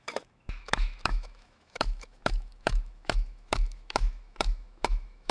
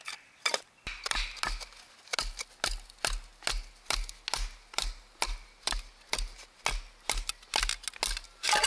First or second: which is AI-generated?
first